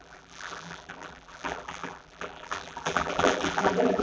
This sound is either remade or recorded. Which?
remade